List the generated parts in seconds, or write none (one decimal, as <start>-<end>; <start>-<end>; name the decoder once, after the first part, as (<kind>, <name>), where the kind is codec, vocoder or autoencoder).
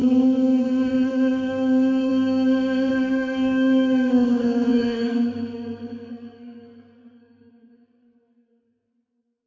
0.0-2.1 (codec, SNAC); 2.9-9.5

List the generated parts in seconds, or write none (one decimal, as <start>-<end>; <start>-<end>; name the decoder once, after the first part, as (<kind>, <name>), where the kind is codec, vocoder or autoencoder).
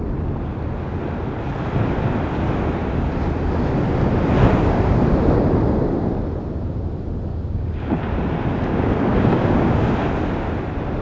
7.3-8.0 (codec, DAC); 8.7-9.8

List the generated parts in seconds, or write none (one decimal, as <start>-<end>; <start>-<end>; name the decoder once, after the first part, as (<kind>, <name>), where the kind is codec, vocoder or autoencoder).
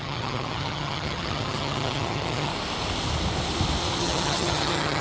0.0-2.5 (vocoder, HiFi-GAN); 4.0-5.0